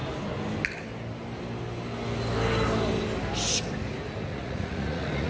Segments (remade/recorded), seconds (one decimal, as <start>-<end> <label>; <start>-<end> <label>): 0.0-4.3 recorded; 4.3-5.3 remade